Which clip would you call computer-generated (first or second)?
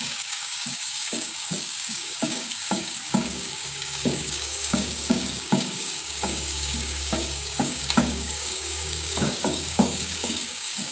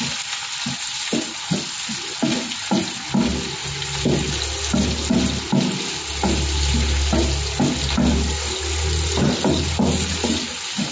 first